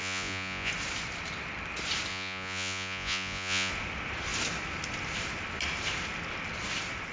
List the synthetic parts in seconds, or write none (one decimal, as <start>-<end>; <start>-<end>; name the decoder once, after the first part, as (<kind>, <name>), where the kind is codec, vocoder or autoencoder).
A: 0.0-0.7 (vocoder, Vocos); 2.1-3.7